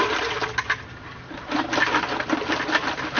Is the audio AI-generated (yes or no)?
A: yes